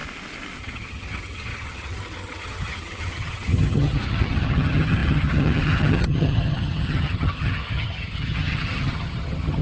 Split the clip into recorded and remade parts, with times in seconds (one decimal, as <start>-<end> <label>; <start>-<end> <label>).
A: 0.0-0.6 recorded; 0.6-9.6 remade

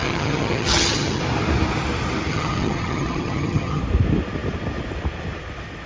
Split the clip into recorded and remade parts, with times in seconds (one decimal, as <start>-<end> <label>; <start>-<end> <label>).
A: 0.0-1.2 remade; 1.2-2.3 recorded; 2.3-3.8 remade; 3.8-5.9 recorded

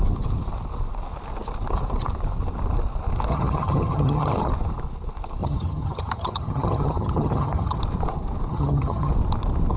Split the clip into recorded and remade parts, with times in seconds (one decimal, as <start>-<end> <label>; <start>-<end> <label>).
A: 0.0-3.3 recorded; 3.3-4.5 remade; 4.5-5.4 recorded; 5.4-7.8 remade; 7.8-8.5 recorded; 8.5-9.1 remade; 9.1-9.8 recorded

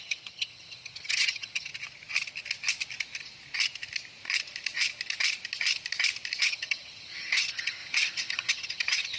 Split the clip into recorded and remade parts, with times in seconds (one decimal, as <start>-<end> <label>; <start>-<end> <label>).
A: 0.0-1.7 remade; 1.7-6.4 recorded; 6.4-9.2 remade

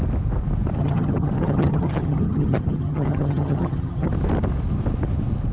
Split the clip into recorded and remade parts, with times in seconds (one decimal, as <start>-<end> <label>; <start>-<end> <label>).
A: 0.0-0.8 recorded; 0.8-4.1 remade; 4.1-5.5 recorded